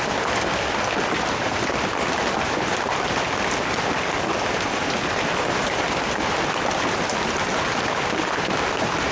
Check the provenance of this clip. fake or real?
real